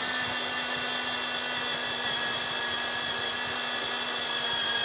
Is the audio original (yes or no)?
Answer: yes